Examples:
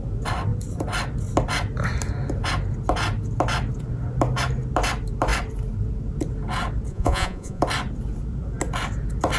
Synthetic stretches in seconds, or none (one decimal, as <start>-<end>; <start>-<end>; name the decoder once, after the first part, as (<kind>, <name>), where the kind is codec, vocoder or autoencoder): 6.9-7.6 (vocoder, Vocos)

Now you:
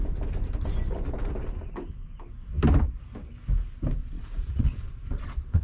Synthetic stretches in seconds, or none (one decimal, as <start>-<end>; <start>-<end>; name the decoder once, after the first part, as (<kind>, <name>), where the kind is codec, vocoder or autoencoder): 4.0-5.6 (vocoder, Vocos)

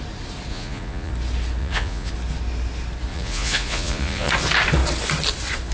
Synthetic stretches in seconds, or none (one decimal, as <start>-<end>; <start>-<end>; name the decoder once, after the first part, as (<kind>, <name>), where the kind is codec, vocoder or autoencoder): 0.5-1.1 (vocoder, Vocos); 1.6-2.1; 3.1-4.3

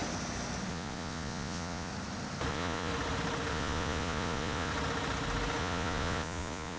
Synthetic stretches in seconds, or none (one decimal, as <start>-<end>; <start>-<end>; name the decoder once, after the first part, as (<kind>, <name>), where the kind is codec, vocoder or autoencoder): 0.7-1.9 (vocoder, Vocos); 2.5-2.9; 3.5-4.7; 5.6-6.8

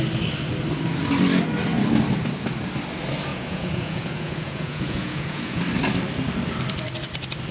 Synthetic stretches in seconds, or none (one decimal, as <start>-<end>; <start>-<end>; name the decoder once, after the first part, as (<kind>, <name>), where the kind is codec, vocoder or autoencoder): 3.3-5.6 (vocoder, Vocos)

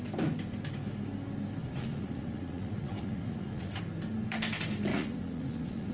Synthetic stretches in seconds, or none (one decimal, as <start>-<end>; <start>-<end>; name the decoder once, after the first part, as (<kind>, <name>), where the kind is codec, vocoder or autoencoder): 1.6-3.8 (vocoder, Vocos); 4.9-5.9

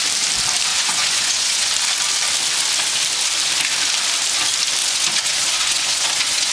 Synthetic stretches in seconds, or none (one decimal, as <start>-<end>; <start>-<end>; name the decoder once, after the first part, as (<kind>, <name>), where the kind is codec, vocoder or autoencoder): 0.7-1.7 (vocoder, Vocos); 4.8-6.5

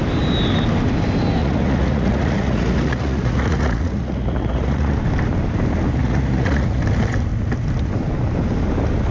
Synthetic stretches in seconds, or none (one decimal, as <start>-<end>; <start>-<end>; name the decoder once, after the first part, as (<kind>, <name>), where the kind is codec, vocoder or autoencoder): 1.4-5.0 (vocoder, Vocos); 6.0-6.8